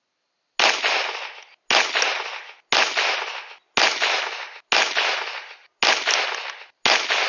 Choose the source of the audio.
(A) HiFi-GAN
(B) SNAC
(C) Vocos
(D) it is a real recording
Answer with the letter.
D